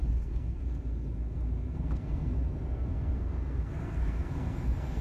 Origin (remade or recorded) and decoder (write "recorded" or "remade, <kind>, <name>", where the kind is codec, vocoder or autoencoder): remade, codec, SNAC